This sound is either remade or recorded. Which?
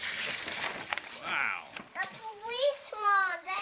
remade